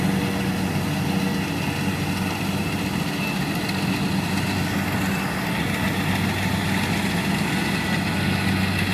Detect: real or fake real